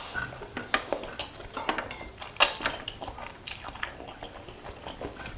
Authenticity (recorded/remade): recorded